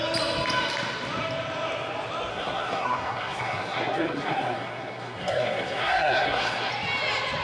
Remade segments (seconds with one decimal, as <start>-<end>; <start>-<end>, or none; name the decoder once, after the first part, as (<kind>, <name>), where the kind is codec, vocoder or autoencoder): 2.3-6.7 (codec, SNAC)